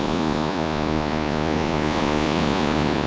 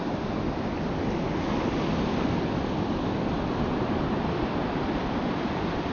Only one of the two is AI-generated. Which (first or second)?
first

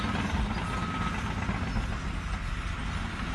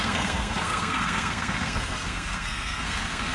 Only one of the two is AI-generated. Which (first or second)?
second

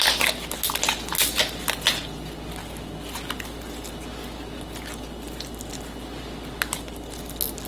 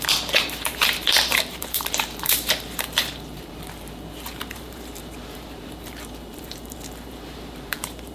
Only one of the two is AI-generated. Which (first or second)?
second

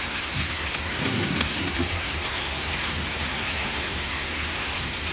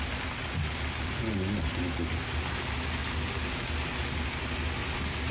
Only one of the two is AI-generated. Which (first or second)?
first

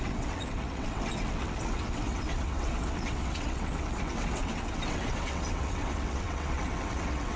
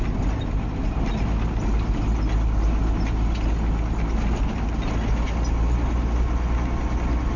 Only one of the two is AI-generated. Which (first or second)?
first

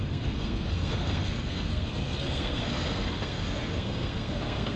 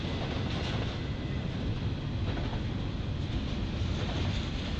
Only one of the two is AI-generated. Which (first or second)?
first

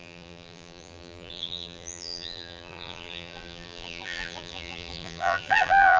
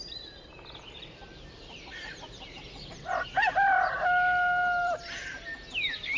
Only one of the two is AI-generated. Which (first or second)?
first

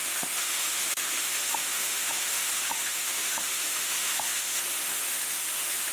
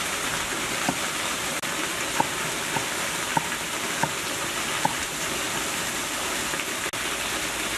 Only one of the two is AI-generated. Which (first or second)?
first